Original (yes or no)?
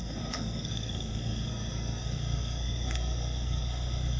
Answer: no